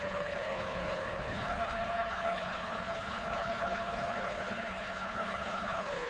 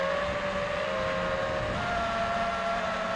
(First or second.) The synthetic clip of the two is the first